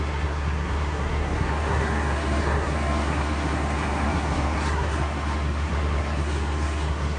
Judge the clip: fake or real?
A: fake